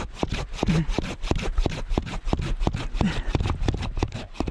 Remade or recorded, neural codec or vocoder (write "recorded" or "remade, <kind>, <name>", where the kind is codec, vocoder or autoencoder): recorded